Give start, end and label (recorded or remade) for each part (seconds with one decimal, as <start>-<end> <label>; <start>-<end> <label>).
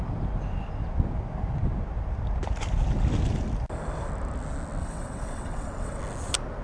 0.0-4.8 recorded; 4.8-6.0 remade; 6.0-6.6 recorded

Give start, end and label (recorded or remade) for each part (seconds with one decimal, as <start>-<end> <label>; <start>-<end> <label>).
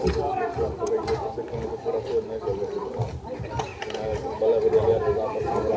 0.0-5.8 recorded